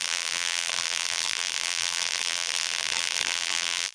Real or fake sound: fake